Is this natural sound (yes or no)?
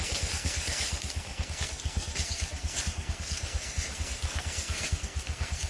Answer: no